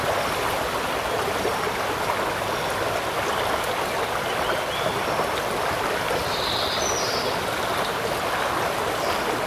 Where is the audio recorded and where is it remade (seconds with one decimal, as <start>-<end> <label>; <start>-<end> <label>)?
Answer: 0.0-9.5 recorded